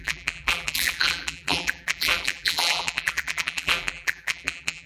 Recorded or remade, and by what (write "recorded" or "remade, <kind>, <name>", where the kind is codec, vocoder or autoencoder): remade, vocoder, BigVGAN v2